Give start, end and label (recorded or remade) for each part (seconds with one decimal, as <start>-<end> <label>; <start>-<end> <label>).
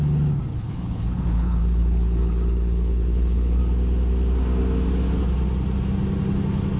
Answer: 0.0-0.5 recorded; 0.5-3.6 remade; 3.6-6.8 recorded